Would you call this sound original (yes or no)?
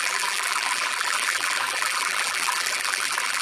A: no